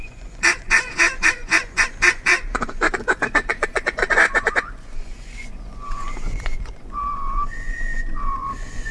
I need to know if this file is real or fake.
fake